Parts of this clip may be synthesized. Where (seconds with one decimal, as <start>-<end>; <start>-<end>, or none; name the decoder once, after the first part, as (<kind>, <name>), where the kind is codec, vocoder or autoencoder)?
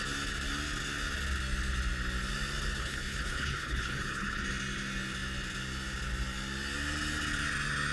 2.8-4.4 (codec, HILCodec)